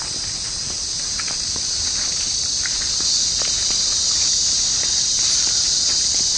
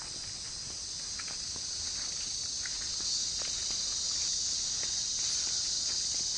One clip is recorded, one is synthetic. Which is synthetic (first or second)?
first